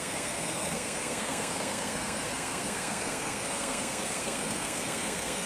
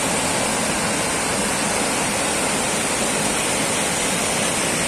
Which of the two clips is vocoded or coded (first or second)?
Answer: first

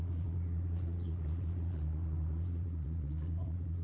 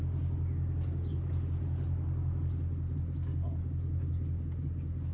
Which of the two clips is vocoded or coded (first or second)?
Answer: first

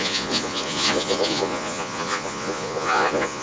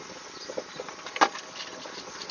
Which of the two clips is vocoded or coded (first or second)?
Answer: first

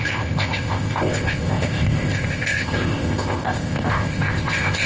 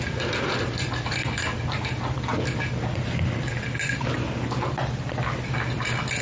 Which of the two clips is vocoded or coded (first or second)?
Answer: first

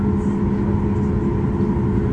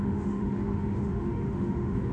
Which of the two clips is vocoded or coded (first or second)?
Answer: second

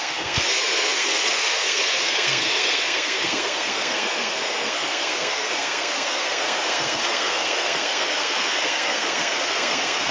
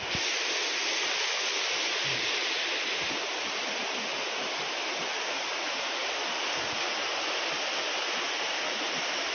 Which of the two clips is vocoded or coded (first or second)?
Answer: first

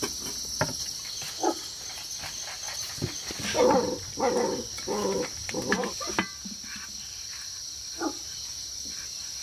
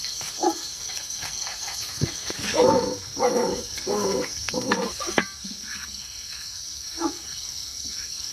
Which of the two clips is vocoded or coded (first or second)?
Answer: second